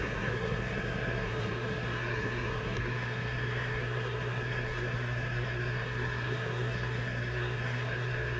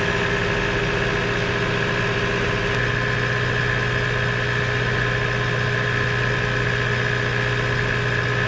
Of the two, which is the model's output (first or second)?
first